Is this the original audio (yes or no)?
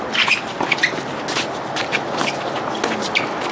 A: yes